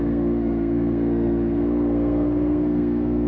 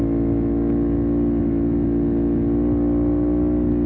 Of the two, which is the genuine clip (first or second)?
second